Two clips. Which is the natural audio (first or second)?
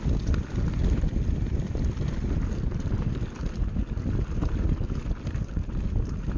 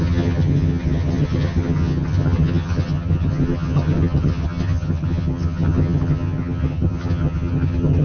first